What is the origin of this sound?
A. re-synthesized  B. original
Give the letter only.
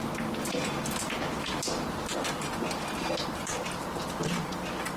B